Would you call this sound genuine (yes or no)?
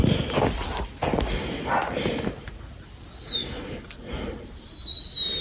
yes